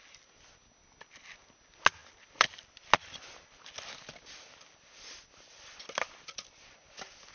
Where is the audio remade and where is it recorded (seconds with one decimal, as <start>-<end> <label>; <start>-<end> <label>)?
0.0-2.0 recorded; 2.0-2.7 remade; 2.7-7.3 recorded